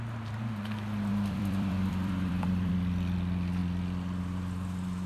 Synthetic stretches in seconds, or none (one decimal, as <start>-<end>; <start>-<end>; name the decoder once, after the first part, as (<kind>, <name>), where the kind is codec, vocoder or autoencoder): 1.1-2.7 (vocoder, BigVGAN v2)